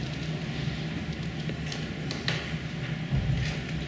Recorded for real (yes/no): yes